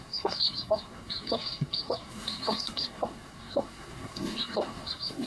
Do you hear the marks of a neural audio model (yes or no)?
yes